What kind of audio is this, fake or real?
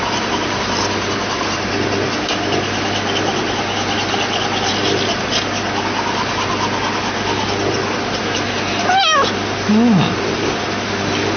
real